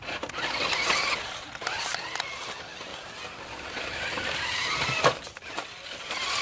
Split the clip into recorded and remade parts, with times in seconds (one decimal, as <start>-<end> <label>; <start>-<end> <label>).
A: 0.0-6.4 recorded